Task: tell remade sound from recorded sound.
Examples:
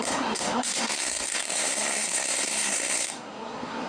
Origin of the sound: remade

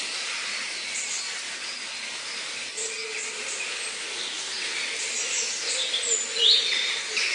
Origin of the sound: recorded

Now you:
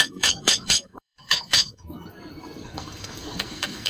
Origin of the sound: remade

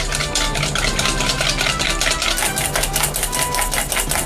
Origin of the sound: recorded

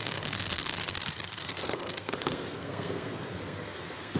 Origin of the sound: remade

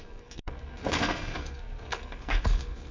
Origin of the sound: remade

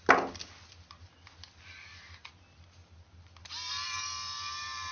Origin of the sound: recorded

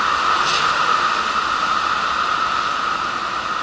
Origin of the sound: recorded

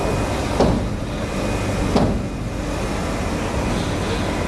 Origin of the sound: recorded